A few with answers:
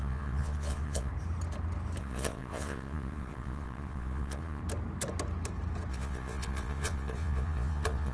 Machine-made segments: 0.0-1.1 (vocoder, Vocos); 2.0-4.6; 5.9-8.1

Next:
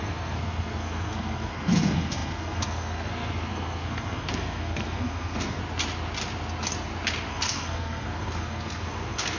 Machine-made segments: 0.0-5.6 (codec, SNAC); 7.3-9.4

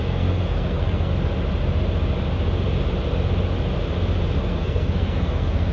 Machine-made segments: 0.0-1.1 (codec, SNAC); 4.4-5.7

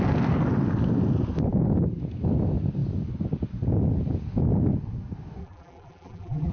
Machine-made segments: 5.4-6.5 (vocoder, BigVGAN v2)

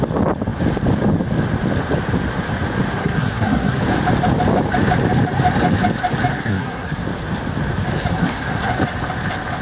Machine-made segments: 3.0-3.8 (codec, SNAC); 6.3-7.0; 8.2-8.8

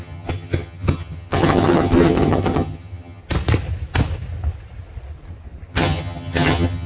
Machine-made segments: 0.0-3.2 (vocoder, HiFi-GAN); 5.7-6.9